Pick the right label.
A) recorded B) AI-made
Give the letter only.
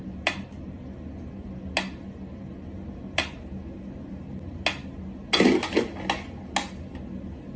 A